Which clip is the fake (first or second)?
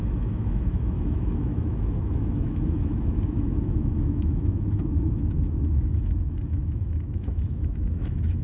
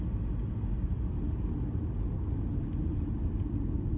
first